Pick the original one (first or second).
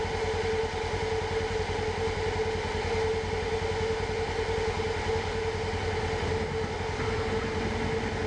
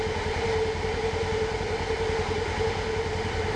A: first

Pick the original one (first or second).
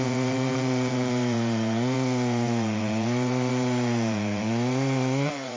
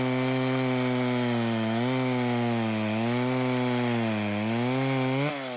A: second